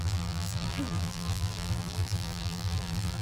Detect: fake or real fake